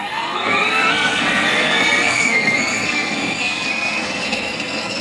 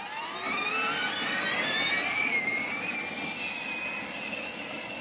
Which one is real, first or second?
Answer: second